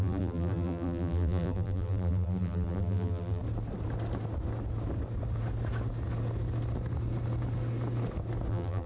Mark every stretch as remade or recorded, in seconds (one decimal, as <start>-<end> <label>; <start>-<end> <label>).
0.0-3.4 remade; 3.4-8.5 recorded; 8.5-8.9 remade